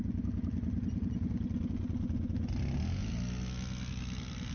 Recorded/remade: recorded